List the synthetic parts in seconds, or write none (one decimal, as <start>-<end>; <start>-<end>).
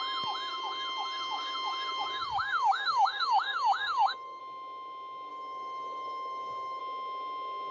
0.5-4.4; 5.3-6.8